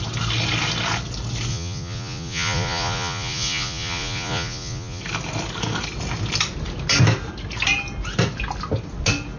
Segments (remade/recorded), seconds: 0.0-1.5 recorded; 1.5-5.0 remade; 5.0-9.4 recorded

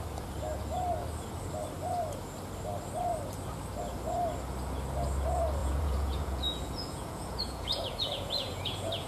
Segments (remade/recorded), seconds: 0.0-5.6 recorded; 5.6-9.1 remade

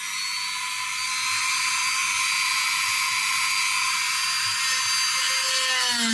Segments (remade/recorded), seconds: 0.0-6.1 recorded

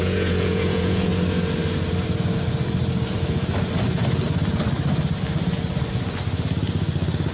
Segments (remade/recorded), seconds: 0.0-1.1 remade; 1.1-7.3 recorded